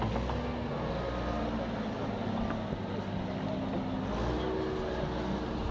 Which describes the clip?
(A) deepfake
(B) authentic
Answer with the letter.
B